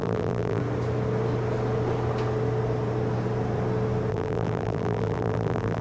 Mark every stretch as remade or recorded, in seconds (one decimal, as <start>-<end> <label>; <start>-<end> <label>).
0.0-0.6 remade; 0.6-4.1 recorded; 4.1-5.8 remade